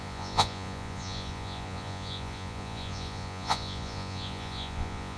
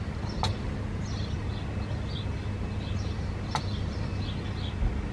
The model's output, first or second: first